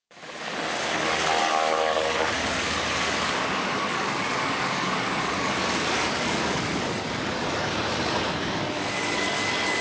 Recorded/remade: remade